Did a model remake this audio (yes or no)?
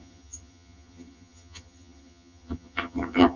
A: yes